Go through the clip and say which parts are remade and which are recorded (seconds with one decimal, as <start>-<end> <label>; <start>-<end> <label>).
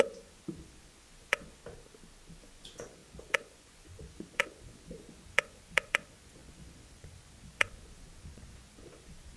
0.0-1.6 remade; 1.6-2.4 recorded; 2.4-9.4 remade